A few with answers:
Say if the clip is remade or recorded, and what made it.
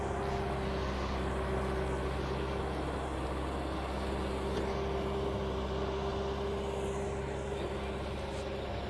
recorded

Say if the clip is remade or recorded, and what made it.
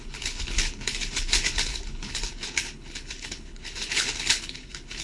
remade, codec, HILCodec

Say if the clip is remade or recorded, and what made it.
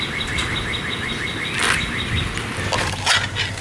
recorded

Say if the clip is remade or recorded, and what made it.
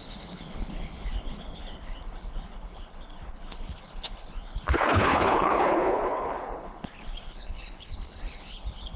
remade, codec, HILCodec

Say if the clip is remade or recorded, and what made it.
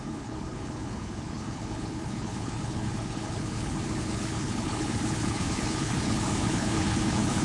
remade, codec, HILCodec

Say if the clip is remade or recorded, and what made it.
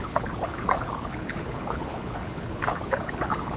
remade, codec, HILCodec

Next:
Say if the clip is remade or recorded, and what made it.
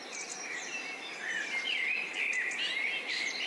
recorded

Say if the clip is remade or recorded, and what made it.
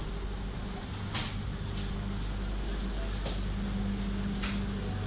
recorded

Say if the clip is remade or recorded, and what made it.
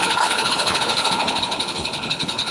remade, codec, HILCodec